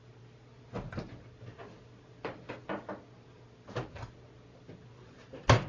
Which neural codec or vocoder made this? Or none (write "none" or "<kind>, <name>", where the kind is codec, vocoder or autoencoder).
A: none